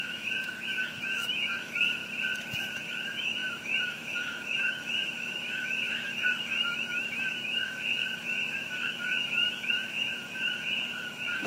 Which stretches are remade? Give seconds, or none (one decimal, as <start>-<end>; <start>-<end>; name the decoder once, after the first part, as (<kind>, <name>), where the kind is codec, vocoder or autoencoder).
0.0-2.0 (autoencoder, DAC-VAE); 2.6-11.5